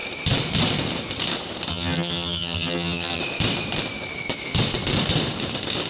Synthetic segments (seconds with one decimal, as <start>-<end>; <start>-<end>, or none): 1.7-3.2